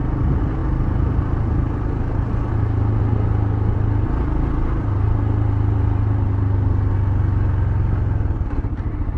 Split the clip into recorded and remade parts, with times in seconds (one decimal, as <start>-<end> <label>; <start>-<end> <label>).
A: 0.0-9.2 recorded